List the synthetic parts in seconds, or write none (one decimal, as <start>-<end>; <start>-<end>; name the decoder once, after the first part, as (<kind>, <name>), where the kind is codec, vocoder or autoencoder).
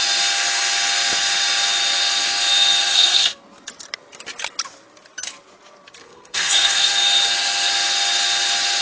2.9-3.4 (codec, SNAC); 6.0-6.9